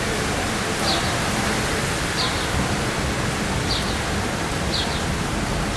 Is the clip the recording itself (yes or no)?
yes